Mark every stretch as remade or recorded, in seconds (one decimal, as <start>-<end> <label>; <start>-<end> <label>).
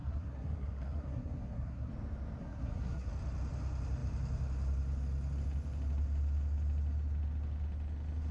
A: 0.0-1.9 remade; 1.9-2.4 recorded; 2.4-3.1 remade; 3.1-8.3 recorded